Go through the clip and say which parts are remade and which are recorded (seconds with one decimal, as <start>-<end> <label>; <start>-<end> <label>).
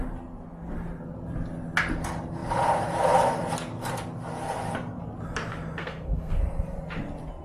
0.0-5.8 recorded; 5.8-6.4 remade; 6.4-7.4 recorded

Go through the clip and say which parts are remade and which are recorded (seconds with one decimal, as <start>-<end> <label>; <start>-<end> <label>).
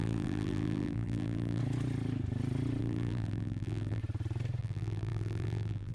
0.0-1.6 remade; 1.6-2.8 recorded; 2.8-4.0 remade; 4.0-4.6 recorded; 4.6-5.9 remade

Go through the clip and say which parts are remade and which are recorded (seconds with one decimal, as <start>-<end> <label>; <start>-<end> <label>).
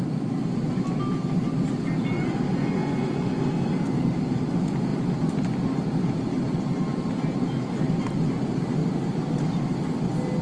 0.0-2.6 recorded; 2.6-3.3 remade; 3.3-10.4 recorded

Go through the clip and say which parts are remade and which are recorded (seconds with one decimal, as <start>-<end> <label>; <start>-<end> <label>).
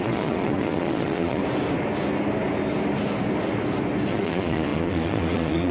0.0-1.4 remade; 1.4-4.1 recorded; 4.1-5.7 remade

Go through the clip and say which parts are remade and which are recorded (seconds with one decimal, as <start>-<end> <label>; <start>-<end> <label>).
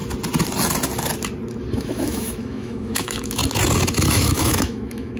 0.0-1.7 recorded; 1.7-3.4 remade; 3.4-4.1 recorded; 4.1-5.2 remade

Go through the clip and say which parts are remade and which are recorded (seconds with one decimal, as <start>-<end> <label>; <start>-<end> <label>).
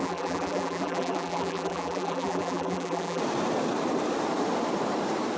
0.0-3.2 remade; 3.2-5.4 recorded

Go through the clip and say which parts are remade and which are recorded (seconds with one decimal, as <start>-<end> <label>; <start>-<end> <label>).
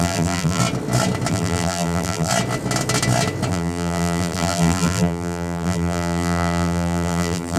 0.0-0.6 remade; 0.6-1.3 recorded; 1.3-2.3 remade; 2.3-3.5 recorded; 3.5-7.6 remade